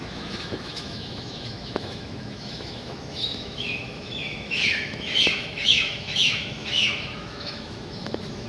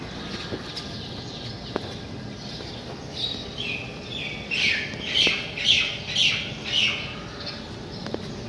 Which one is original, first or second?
second